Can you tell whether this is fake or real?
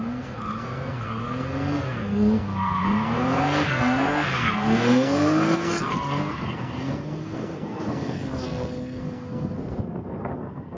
fake